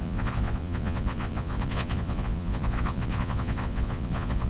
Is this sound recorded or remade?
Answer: remade